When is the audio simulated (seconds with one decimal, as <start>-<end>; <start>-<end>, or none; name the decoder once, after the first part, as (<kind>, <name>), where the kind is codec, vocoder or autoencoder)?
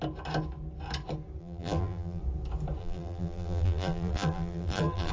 1.4-2.2 (vocoder, BigVGAN v2); 2.8-5.1